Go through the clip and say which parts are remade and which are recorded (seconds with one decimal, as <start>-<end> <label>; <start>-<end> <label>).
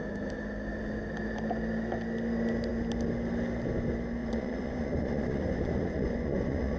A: 0.0-4.2 recorded; 4.2-6.8 remade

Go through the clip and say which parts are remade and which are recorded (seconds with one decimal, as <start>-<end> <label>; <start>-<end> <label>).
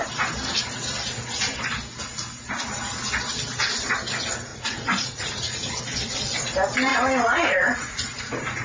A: 0.0-4.5 recorded; 4.5-5.7 remade; 5.7-6.9 recorded; 6.9-8.2 remade; 8.2-8.6 recorded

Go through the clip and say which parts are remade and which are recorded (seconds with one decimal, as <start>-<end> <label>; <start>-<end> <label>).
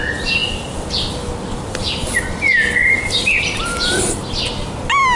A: 0.0-5.2 recorded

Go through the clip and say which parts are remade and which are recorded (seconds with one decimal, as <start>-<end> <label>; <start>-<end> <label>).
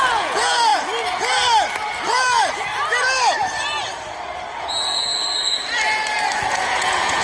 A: 0.0-0.7 remade; 0.7-4.6 recorded; 4.6-5.1 remade; 5.1-6.5 recorded; 6.5-7.2 remade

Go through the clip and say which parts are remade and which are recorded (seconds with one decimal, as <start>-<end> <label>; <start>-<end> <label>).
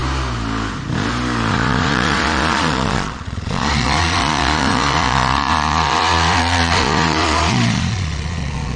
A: 0.0-1.5 recorded; 1.5-8.8 remade